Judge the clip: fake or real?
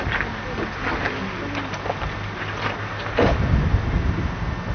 real